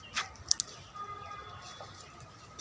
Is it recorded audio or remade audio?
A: recorded